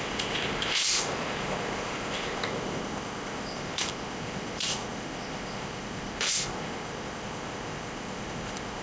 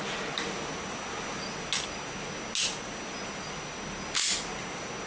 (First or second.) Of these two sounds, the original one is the second